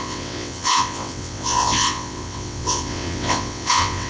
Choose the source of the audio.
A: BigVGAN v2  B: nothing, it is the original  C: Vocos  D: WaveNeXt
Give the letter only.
D